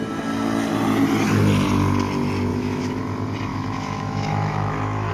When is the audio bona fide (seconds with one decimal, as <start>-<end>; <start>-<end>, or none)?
0.0-2.5; 3.0-3.5